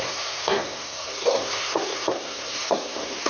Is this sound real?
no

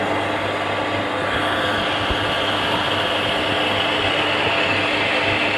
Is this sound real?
yes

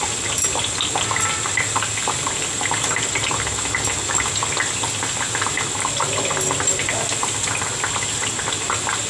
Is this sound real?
yes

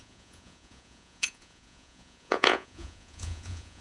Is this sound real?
no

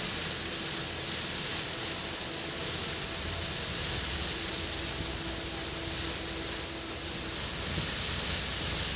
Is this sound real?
yes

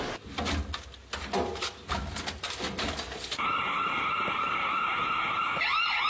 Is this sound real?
yes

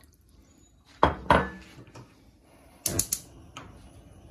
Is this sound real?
yes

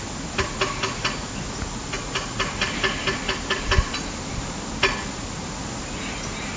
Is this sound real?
yes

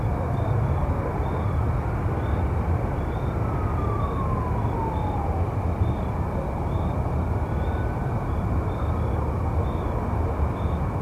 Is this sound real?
yes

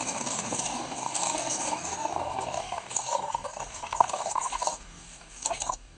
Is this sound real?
no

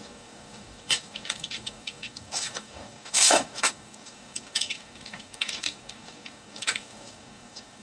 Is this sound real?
no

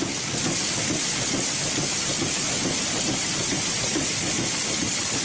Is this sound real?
yes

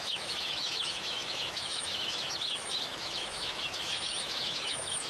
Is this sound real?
no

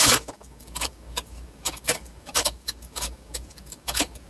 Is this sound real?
no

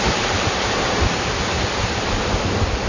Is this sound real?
yes